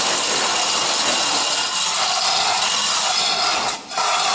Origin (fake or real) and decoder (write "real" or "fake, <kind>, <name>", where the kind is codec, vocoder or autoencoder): real